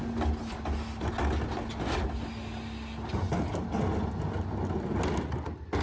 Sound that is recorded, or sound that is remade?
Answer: recorded